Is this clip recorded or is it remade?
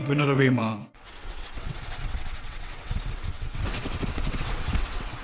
remade